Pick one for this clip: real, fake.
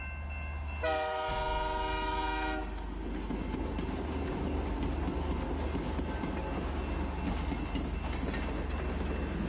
real